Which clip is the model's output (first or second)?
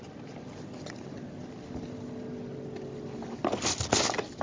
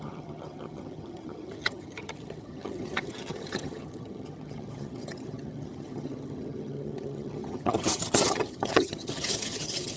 second